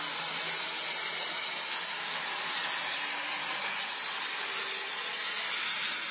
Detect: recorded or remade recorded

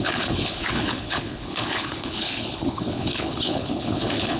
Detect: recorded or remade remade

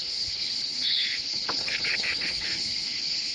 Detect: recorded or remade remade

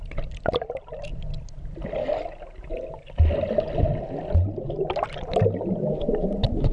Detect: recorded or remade recorded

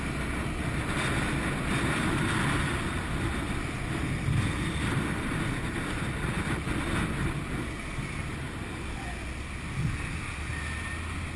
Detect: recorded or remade recorded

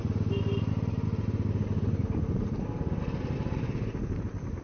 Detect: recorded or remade recorded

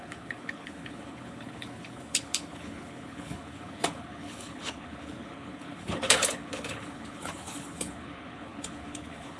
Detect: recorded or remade remade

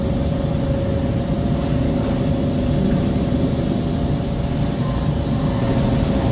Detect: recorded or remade recorded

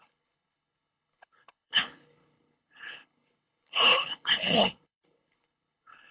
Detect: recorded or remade remade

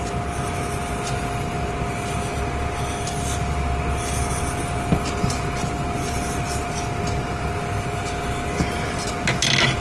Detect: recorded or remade recorded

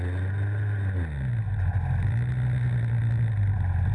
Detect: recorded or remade recorded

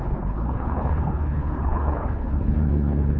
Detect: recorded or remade remade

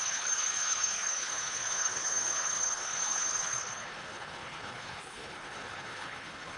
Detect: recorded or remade remade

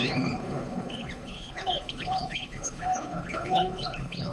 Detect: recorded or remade remade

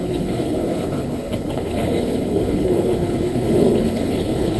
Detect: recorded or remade remade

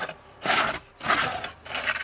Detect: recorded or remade recorded